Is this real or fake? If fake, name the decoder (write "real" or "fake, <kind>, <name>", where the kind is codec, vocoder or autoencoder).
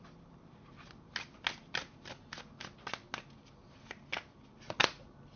real